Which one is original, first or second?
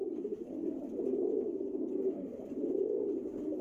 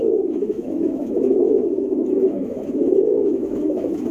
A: first